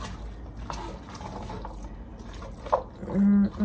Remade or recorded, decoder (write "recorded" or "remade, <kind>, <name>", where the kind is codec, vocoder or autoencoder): recorded